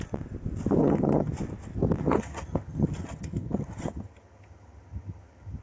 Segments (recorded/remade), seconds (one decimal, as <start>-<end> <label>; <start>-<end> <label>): 0.0-0.8 recorded; 0.8-1.3 remade; 1.3-2.0 recorded; 2.0-5.6 remade